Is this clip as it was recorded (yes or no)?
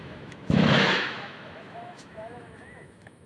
no